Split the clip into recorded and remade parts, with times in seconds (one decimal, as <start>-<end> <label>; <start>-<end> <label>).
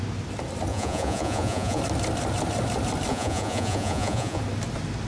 0.0-0.7 recorded; 0.7-1.8 remade; 1.8-3.1 recorded; 3.1-4.4 remade; 4.4-5.1 recorded